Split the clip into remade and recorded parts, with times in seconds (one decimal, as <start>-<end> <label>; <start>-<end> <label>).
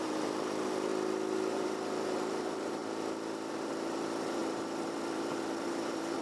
0.0-0.9 remade; 0.9-1.5 recorded; 1.5-2.8 remade; 2.8-3.5 recorded; 3.5-6.2 remade